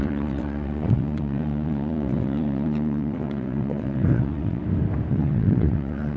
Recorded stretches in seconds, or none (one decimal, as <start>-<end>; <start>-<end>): 4.6-5.1